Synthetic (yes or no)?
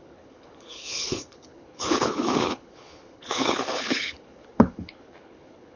yes